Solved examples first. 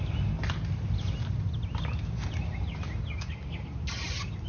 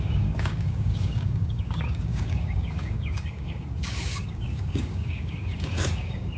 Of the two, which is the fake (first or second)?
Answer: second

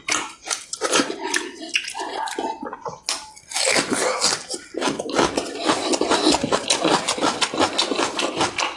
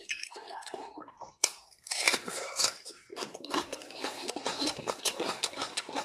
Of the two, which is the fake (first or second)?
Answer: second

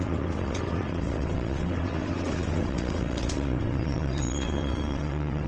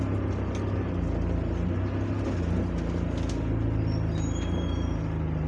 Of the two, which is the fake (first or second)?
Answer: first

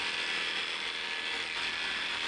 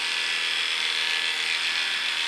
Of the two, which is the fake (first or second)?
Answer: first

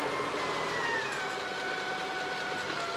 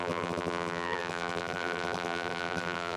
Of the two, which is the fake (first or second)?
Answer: second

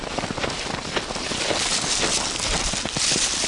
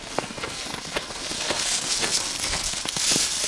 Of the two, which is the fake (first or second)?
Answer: second